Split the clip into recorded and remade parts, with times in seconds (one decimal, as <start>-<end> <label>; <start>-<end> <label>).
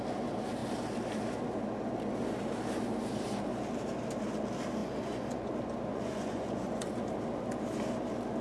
0.0-4.8 recorded; 4.8-5.5 remade; 5.5-5.9 recorded; 5.9-6.9 remade; 6.9-8.4 recorded